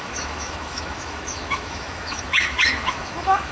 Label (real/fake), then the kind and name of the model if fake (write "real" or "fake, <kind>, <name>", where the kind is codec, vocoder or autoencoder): fake, autoencoder, DAC-VAE